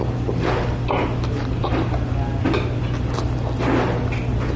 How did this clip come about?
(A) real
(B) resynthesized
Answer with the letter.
B